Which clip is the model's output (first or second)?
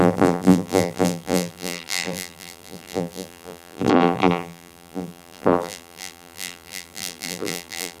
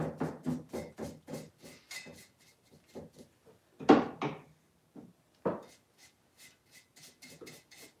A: first